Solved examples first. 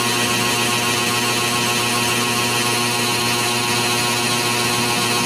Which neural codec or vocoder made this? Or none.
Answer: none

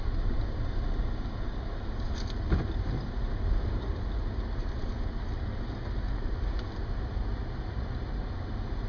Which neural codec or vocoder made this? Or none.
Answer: none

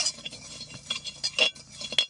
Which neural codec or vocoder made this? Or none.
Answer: none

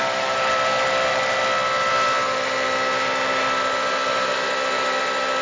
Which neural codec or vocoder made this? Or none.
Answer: none